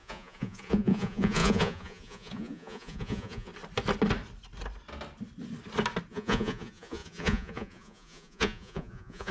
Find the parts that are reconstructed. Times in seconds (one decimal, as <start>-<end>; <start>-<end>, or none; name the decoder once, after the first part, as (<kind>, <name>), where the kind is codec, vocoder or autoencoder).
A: 0.0-3.5 (vocoder, Vocos); 6.1-9.3